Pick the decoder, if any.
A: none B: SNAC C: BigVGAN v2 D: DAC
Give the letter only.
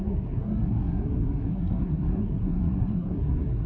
B